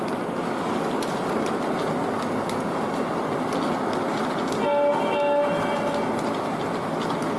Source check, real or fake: real